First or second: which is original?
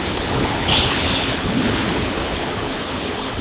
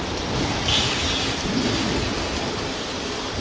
second